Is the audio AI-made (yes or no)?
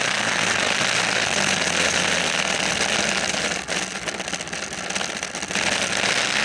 no